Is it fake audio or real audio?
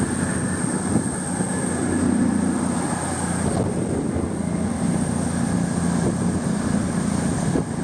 real